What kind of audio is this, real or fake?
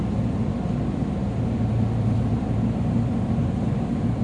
fake